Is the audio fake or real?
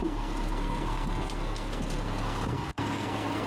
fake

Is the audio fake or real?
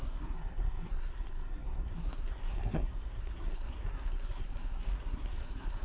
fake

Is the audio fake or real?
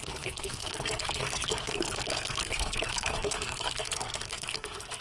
fake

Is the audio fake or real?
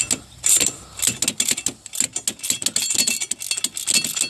real